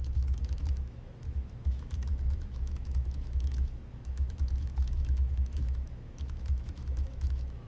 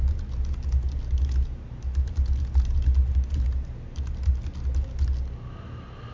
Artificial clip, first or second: first